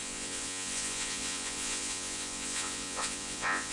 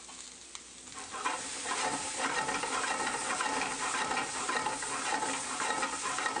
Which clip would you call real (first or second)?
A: second